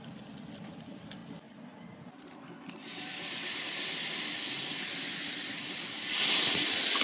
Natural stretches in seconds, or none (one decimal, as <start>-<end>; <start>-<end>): none